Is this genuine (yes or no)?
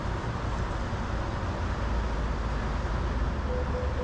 yes